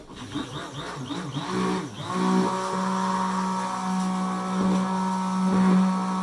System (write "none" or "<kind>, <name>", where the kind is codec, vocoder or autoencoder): none